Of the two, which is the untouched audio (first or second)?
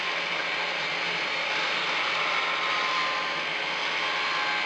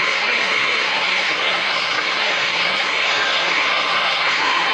first